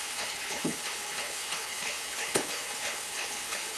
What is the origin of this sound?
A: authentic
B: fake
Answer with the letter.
B